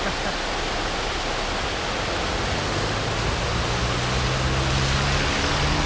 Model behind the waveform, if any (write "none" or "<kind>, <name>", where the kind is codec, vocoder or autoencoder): none